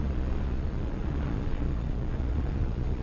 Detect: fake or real fake